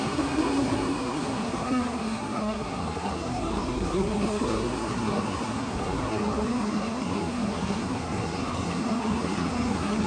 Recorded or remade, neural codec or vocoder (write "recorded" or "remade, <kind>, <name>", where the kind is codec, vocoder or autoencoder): remade, codec, SNAC